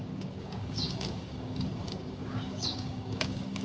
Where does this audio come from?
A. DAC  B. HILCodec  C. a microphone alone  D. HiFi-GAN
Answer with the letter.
A